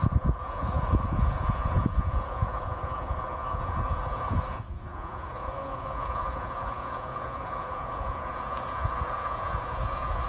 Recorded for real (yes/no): no